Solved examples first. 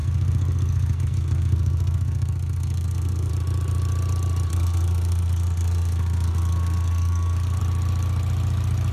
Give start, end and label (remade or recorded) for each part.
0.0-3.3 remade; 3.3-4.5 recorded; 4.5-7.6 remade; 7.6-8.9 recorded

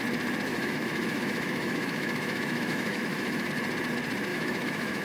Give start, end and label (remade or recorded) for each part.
0.0-0.5 recorded; 0.5-3.5 remade; 3.5-4.3 recorded; 4.3-5.0 remade

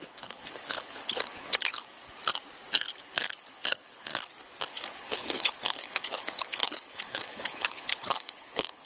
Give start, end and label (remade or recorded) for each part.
0.0-2.2 remade; 2.2-3.0 recorded; 3.0-4.1 remade; 4.1-4.7 recorded; 4.7-8.9 remade

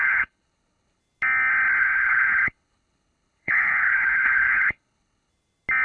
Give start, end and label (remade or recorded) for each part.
0.0-1.0 remade; 1.0-1.8 recorded; 1.8-5.3 remade; 5.3-5.8 recorded

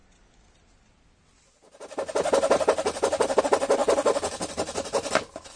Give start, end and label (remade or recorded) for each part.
0.0-5.6 recorded

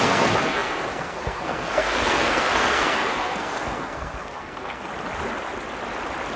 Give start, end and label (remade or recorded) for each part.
0.0-4.9 remade; 4.9-6.4 recorded

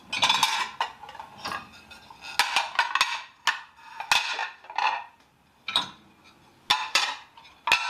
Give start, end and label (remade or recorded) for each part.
0.0-4.4 recorded; 4.4-5.8 remade; 5.8-6.7 recorded; 6.7-7.5 remade; 7.5-7.9 recorded

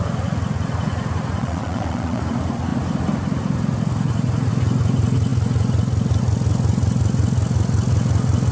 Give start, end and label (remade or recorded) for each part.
0.0-1.4 recorded; 1.4-2.2 remade; 2.2-8.5 recorded